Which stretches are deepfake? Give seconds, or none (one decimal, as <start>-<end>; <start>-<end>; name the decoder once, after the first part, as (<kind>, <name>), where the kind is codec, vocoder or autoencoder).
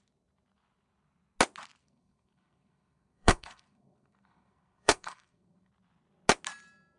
1.8-5.7 (codec, SNAC)